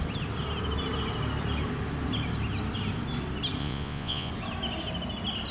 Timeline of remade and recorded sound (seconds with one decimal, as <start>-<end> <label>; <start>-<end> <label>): 0.0-3.6 recorded; 3.6-4.3 remade; 4.3-5.5 recorded